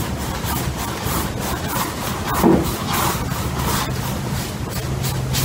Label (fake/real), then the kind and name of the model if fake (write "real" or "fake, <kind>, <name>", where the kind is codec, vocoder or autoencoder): real